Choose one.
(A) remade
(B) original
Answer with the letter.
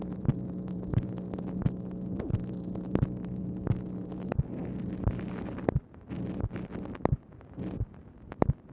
B